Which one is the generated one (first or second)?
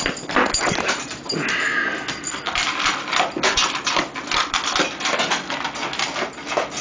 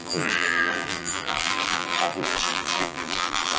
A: second